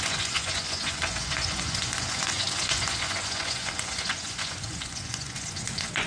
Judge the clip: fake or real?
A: fake